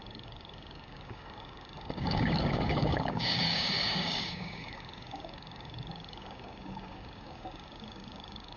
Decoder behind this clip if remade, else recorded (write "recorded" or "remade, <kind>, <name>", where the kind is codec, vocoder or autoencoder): remade, codec, DAC